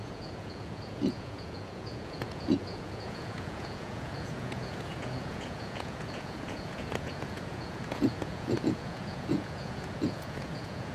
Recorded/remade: remade